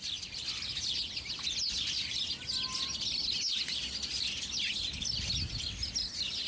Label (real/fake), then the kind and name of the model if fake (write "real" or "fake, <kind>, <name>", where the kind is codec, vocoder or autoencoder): real